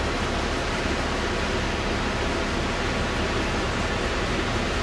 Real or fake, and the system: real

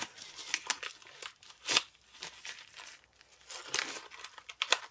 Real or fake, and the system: real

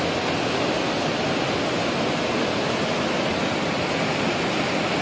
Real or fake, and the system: real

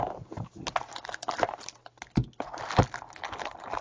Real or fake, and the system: real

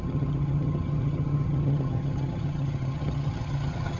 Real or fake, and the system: fake, vocoder, HiFi-GAN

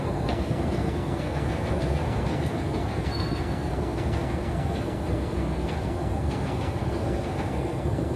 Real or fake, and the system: fake, codec, SNAC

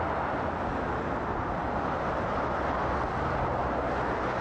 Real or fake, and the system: real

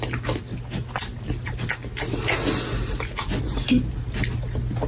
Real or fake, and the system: real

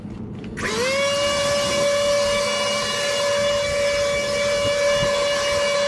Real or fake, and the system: real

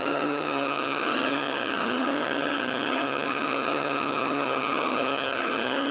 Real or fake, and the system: fake, vocoder, HiFi-GAN